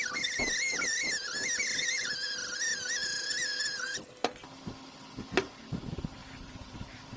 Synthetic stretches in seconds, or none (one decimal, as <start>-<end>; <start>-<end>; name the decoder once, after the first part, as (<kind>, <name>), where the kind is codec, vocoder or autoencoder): 6.2-7.2 (vocoder, BigVGAN v2)